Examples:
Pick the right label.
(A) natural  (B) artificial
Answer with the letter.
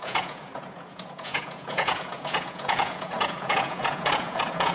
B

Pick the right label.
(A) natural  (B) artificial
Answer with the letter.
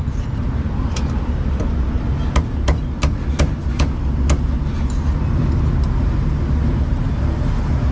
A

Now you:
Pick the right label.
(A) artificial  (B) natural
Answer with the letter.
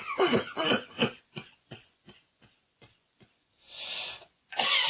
A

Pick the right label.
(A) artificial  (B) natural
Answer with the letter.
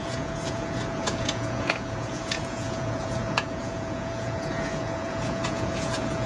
A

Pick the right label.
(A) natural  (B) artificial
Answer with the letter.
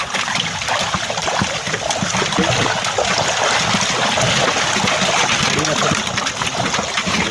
A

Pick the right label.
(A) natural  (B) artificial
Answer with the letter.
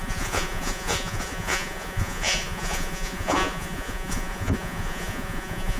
B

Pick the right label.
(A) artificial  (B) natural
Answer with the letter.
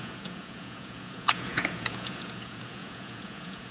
A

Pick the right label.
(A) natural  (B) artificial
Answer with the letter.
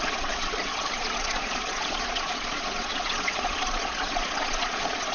B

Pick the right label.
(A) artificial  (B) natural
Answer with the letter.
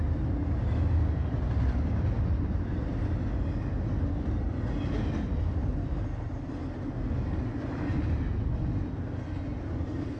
B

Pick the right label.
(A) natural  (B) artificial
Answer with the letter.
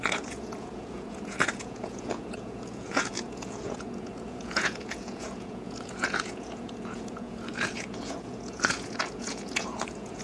B